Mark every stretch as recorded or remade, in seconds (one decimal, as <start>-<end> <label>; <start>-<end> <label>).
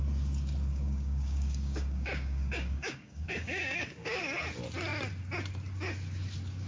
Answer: 0.0-0.7 recorded; 0.7-4.2 remade; 4.2-6.7 recorded